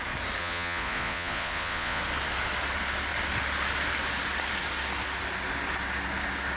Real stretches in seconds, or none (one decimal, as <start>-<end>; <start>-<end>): 0.0-0.4; 2.0-6.6

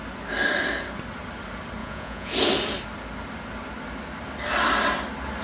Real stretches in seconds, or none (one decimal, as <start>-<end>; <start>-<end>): 0.0-1.8; 2.3-5.4

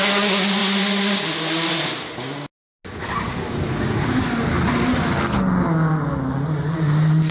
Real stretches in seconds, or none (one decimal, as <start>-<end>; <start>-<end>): 0.0-7.3

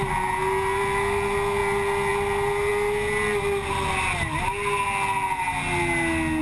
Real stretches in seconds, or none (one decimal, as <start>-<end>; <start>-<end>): 0.0-6.4

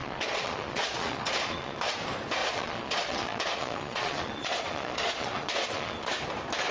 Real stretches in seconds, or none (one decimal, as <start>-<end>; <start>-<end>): 1.8-2.4; 6.1-6.7

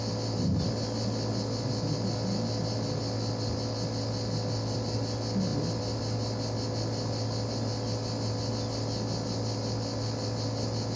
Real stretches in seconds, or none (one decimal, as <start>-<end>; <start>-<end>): 0.0-11.0

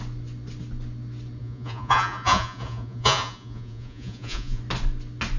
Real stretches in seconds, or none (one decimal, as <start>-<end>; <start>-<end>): 0.0-1.4; 4.6-5.4